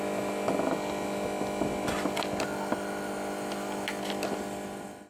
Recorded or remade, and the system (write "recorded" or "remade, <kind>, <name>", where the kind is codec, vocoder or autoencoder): recorded